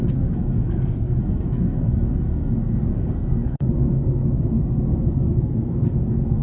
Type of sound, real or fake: fake